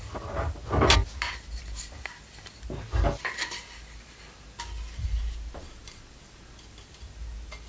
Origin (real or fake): real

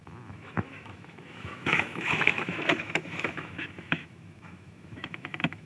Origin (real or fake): fake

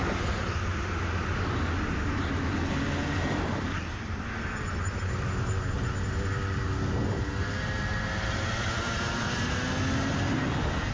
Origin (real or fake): real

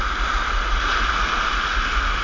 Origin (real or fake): real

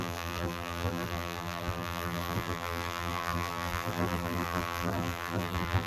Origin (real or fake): fake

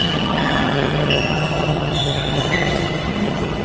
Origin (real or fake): fake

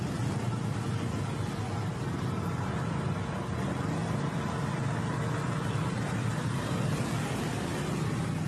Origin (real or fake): real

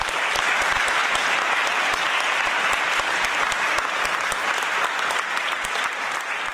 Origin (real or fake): real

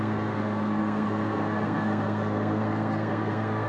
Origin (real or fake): fake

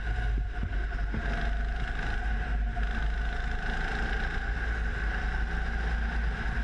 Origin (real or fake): real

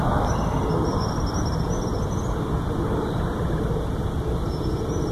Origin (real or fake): real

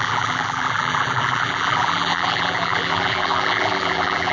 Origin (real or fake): fake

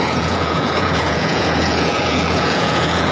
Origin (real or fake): fake